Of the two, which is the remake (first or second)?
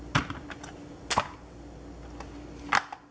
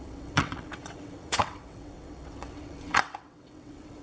second